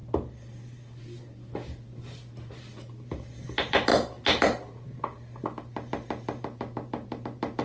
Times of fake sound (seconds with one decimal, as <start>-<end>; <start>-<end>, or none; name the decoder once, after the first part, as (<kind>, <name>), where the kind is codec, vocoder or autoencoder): none

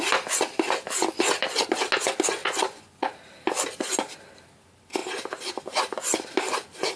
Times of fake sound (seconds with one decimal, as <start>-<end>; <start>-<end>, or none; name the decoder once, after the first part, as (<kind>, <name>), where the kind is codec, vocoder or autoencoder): 2.4-3.1 (vocoder, Vocos)

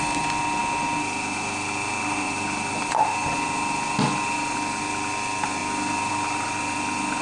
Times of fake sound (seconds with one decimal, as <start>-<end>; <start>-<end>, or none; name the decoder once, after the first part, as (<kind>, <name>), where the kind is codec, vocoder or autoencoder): none

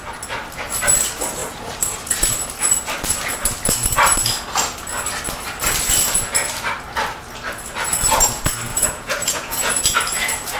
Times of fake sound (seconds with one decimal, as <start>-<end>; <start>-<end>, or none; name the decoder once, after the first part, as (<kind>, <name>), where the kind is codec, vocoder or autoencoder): 8.7-9.8 (vocoder, Vocos)

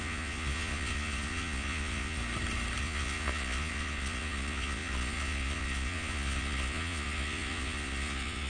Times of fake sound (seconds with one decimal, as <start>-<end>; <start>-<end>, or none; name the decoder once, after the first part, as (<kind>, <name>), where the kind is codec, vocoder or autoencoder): 0.0-2.2 (vocoder, Vocos); 2.8-8.5

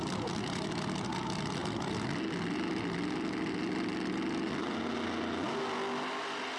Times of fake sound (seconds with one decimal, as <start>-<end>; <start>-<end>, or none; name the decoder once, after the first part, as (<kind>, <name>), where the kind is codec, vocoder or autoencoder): none